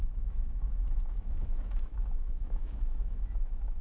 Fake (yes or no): yes